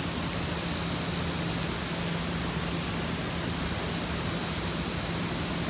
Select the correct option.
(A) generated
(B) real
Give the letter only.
B